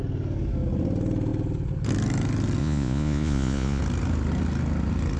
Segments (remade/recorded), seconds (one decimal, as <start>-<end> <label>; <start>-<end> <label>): 0.0-2.6 recorded; 2.6-3.8 remade; 3.8-5.2 recorded